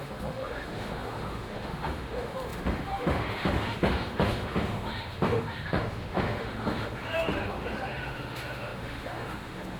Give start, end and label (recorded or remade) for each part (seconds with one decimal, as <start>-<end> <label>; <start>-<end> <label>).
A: 0.0-9.8 remade